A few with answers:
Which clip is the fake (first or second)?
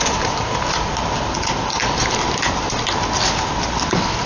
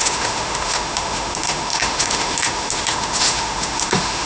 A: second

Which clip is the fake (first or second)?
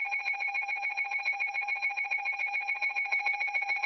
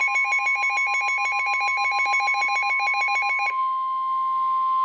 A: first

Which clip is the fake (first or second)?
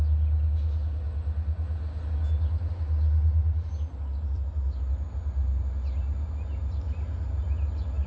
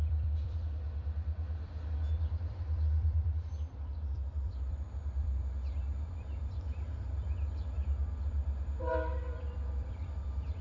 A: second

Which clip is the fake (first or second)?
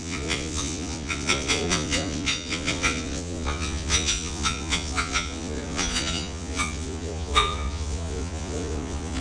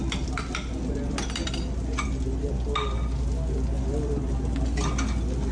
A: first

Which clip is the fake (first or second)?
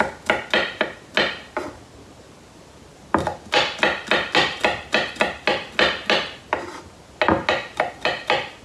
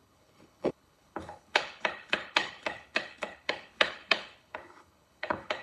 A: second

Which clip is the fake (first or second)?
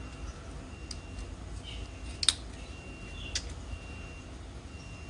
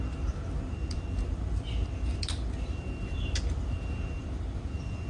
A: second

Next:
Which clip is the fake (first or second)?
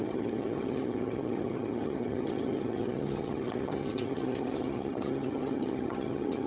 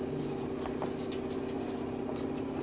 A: first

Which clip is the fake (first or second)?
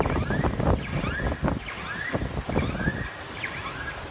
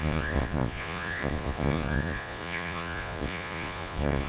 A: second